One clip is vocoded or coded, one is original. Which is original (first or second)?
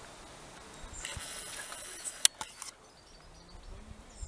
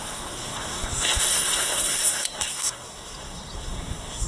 first